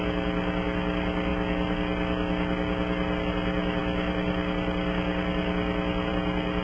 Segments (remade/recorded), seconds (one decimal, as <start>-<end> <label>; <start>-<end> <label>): 0.0-6.6 recorded